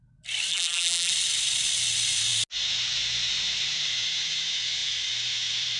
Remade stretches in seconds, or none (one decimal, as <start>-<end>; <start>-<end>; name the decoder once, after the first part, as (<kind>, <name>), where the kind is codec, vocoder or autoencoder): 0.5-1.1 (vocoder, BigVGAN v2)